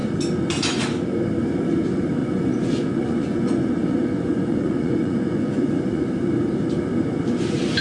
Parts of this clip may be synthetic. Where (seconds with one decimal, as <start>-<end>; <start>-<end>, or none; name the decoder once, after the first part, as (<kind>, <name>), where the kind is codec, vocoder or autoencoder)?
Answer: 2.2-6.0 (vocoder, Vocos)